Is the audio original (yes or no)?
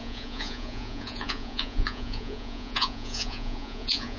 no